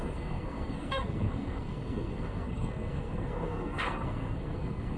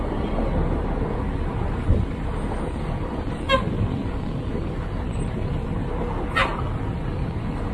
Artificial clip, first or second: first